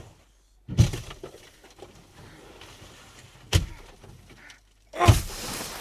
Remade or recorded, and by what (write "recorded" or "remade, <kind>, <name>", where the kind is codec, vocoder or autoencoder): recorded